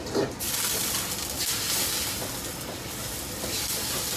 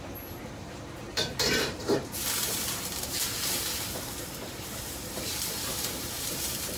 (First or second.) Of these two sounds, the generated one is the second